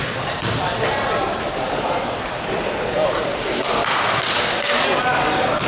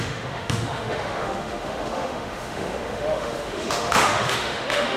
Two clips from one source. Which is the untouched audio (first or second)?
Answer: first